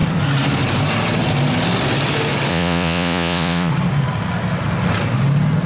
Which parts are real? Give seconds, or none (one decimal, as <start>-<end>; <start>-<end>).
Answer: 0.0-2.5; 3.7-5.7